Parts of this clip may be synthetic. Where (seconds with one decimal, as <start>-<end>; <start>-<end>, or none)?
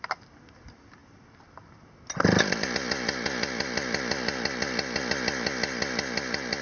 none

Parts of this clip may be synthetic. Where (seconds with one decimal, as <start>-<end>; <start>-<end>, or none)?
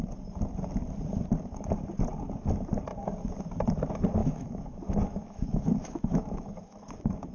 4.2-7.3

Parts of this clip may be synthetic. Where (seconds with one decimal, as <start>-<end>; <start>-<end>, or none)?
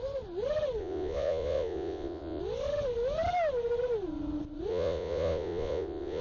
0.8-2.4; 4.7-6.2